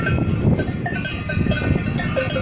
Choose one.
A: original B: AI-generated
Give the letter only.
A